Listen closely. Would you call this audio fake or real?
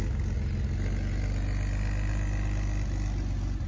real